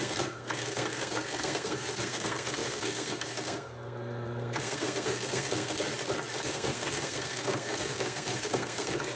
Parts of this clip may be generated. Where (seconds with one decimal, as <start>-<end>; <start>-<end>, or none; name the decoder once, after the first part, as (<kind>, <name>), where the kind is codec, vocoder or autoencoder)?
0.0-5.9 (codec, SNAC); 6.5-9.2